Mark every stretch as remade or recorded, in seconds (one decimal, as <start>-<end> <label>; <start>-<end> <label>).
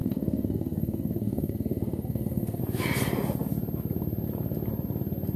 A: 0.0-2.6 remade; 2.6-5.4 recorded